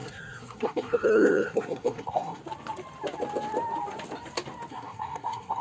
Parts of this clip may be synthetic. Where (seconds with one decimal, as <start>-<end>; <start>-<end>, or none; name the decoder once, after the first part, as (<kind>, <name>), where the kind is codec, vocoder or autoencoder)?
0.0-2.4 (codec, SNAC); 4.7-5.6